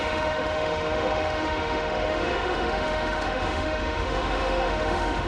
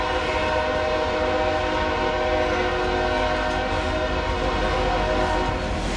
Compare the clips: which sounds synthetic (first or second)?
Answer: first